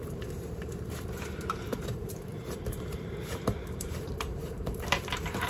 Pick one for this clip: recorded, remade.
remade